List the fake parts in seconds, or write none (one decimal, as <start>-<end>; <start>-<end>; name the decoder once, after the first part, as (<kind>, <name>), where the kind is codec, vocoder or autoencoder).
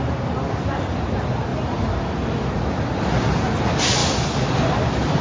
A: none